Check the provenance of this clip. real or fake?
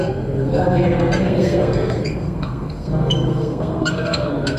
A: fake